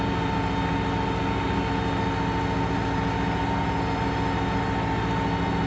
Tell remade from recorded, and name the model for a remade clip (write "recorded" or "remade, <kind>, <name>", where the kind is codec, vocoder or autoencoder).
recorded